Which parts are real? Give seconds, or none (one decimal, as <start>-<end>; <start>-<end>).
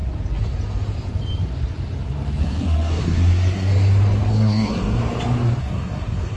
0.0-2.4; 3.7-4.3; 5.0-5.6